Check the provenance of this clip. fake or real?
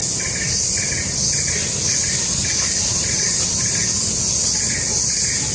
real